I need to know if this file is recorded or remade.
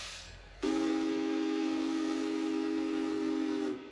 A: remade